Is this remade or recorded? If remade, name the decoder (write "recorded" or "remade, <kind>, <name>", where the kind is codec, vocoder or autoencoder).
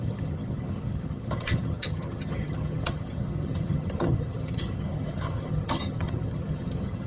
remade, vocoder, HiFi-GAN